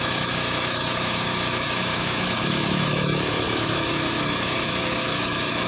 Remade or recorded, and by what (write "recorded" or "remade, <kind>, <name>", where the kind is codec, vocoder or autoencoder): remade, autoencoder, DAC-VAE